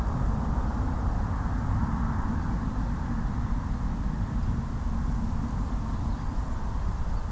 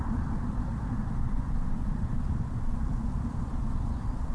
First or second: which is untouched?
first